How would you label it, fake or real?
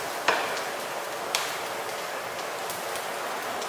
real